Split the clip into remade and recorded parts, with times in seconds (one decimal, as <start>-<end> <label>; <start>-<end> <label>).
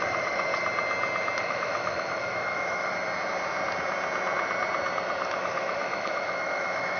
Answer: 0.0-0.5 remade; 0.5-1.4 recorded; 1.4-2.9 remade; 2.9-5.4 recorded; 5.4-7.0 remade